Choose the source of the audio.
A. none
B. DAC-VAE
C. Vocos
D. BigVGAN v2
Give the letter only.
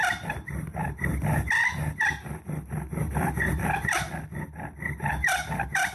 A